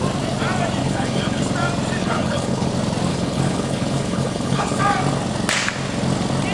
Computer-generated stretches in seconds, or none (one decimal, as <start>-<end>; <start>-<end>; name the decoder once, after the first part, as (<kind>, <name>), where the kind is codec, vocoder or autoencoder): 0.8-1.4 (codec, HILCodec); 2.0-2.7; 3.1-4.8